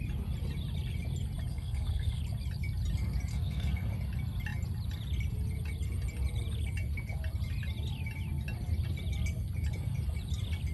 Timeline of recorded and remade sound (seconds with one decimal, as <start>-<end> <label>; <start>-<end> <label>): 0.0-1.5 recorded; 1.5-2.2 remade; 2.2-3.3 recorded; 3.3-3.9 remade; 3.9-10.7 recorded